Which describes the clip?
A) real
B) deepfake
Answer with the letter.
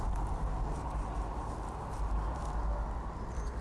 A